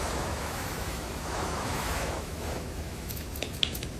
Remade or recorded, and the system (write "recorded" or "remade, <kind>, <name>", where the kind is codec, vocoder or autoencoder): remade, autoencoder, DAC-VAE